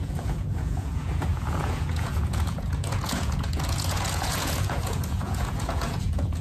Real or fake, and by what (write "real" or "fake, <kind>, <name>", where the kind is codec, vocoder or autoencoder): fake, vocoder, Vocos